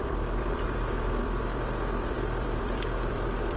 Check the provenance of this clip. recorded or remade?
remade